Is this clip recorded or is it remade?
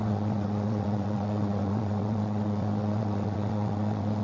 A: remade